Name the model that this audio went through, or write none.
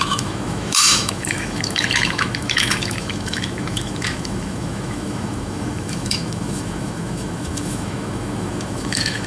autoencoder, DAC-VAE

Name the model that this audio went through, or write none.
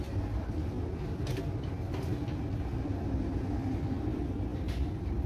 none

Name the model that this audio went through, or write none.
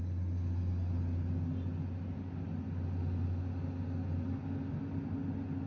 none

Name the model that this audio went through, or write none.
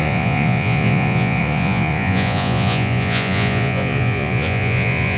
vocoder, Vocos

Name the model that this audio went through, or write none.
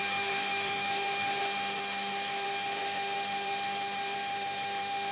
autoencoder, DAC-VAE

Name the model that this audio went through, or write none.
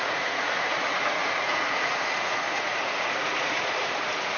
vocoder, Vocos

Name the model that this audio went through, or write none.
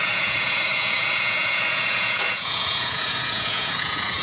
vocoder, Vocos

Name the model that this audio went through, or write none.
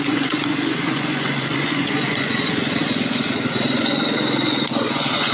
vocoder, Vocos